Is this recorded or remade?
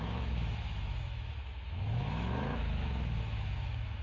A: remade